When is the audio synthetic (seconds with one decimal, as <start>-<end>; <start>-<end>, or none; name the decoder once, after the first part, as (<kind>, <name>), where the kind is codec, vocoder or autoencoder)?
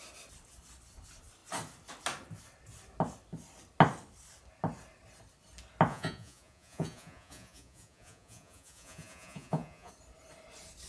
5.9-9.9 (vocoder, Vocos)